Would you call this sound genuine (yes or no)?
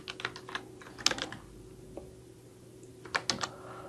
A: yes